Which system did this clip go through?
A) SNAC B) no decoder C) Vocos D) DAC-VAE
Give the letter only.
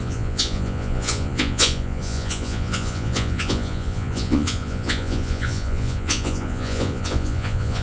C